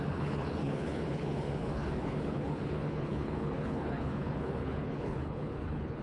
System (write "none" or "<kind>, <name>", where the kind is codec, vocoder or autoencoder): codec, HILCodec